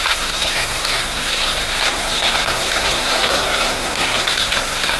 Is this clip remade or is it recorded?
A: remade